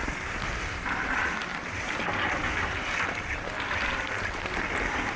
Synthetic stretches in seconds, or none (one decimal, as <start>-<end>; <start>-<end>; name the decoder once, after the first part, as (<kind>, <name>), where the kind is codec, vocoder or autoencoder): none